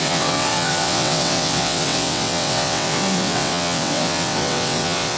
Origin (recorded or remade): remade